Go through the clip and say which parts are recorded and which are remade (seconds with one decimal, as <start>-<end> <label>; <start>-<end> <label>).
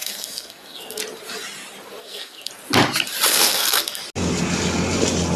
0.0-1.0 remade; 1.0-2.0 recorded; 2.0-2.5 remade; 2.5-3.3 recorded; 3.3-4.0 remade; 4.0-5.4 recorded